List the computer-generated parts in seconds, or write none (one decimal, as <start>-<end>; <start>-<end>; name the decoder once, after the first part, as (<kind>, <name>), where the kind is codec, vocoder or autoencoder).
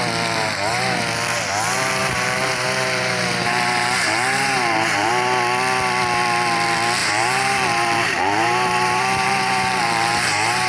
0.4-1.0 (vocoder, BigVGAN v2); 2.0-5.1; 7.0-10.7